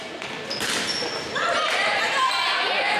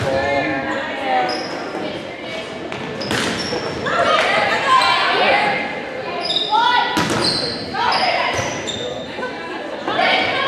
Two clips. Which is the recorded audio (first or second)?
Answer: second